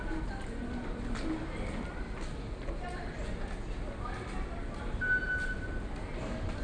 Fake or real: real